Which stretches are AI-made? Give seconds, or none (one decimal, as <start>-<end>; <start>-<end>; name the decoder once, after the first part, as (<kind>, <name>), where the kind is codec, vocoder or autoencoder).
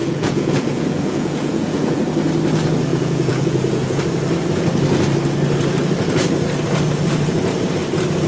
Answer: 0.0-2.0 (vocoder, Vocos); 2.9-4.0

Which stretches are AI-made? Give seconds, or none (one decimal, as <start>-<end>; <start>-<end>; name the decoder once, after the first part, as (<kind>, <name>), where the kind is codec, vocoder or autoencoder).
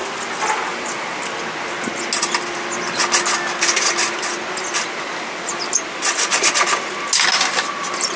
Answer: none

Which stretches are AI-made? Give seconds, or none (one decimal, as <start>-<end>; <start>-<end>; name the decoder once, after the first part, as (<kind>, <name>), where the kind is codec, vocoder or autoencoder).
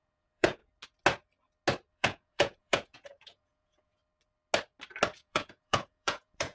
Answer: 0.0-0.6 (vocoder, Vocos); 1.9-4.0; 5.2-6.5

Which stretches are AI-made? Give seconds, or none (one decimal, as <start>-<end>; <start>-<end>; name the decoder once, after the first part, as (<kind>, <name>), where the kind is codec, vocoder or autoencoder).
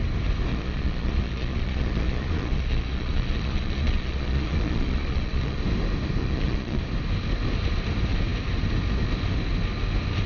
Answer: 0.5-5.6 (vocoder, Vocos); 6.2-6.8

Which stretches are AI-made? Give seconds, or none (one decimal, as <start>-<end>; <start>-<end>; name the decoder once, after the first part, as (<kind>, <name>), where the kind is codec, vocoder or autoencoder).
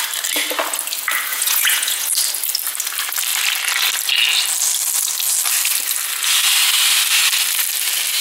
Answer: 1.3-2.1 (vocoder, Vocos)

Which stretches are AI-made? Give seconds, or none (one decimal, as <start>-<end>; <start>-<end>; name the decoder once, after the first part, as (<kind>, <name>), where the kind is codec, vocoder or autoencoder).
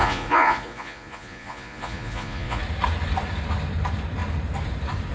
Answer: 0.0-2.6 (vocoder, Vocos)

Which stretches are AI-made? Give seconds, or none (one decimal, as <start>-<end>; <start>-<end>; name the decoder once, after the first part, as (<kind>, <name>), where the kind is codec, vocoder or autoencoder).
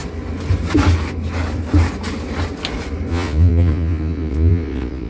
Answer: 3.1-5.1 (vocoder, Vocos)